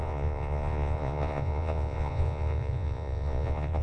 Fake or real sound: fake